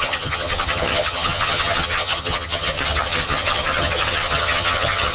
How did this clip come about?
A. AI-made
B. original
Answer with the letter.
A